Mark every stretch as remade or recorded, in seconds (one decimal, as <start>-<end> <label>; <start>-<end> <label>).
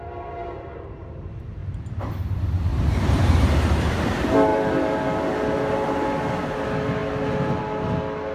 0.0-2.7 recorded; 2.7-3.5 remade; 3.5-4.5 recorded; 4.5-5.2 remade; 5.2-8.3 recorded